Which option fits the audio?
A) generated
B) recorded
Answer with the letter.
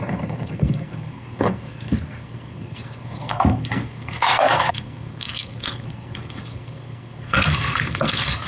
A